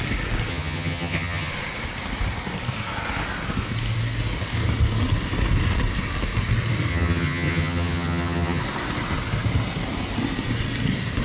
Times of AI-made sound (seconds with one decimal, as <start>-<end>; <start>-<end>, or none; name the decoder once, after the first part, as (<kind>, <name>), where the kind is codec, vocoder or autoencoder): 0.5-1.5 (vocoder, HiFi-GAN); 6.9-8.6